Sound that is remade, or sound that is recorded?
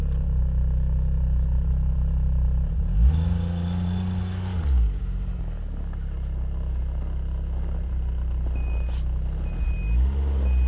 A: recorded